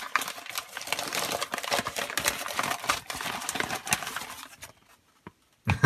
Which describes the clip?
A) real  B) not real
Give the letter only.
A